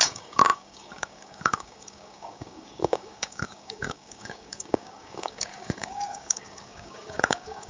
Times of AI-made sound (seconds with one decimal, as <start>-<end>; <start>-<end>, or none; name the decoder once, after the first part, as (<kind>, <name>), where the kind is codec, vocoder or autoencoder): 0.0-7.7 (codec, DAC)